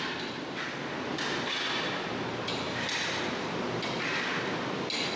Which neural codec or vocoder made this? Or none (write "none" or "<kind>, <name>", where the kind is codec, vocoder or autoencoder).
none